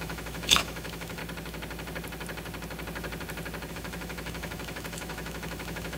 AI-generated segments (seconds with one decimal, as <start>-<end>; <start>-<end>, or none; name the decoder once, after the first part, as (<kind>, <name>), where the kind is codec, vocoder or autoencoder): 0.0-1.2 (autoencoder, DAC-VAE); 3.7-6.0